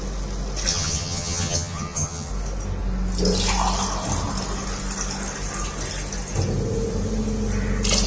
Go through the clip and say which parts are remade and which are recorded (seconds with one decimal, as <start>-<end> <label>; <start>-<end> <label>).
0.0-0.7 recorded; 0.7-2.3 remade; 2.3-8.1 recorded

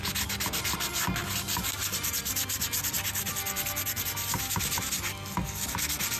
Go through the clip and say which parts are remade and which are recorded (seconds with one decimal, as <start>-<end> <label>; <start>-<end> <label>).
0.0-6.2 recorded